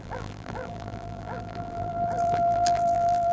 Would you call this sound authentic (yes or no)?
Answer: no